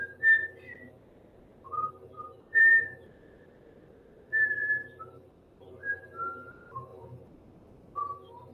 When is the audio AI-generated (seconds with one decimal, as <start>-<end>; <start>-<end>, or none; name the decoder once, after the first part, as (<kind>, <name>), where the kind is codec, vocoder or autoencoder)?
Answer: 1.5-6.2 (vocoder, BigVGAN v2); 6.9-8.0